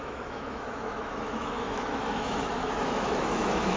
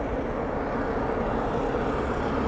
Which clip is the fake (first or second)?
first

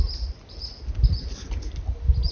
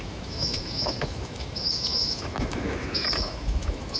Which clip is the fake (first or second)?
second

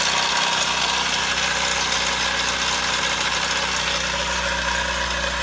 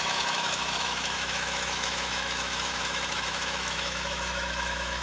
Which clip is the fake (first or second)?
second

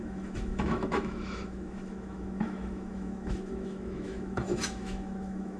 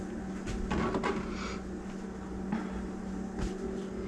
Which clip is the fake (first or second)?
first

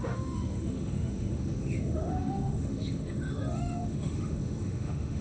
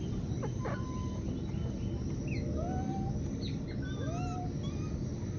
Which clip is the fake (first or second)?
first